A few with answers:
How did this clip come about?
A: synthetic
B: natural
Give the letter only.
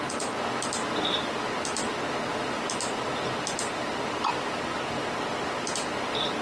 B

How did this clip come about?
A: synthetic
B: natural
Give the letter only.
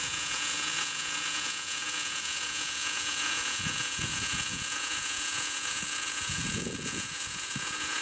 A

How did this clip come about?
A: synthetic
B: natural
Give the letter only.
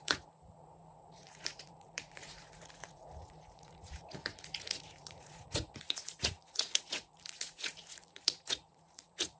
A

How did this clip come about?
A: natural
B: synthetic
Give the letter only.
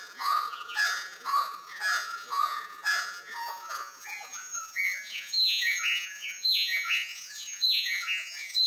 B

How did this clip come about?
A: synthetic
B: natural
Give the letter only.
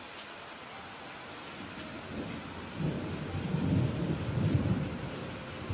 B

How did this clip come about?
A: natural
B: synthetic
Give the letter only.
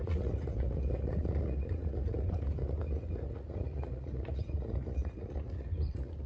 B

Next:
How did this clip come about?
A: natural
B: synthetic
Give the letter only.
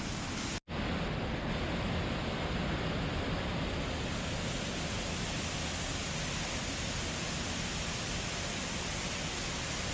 A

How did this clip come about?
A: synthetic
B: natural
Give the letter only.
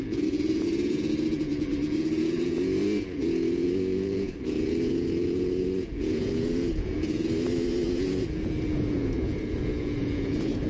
A